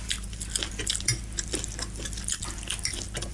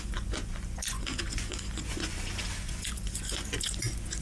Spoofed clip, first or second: second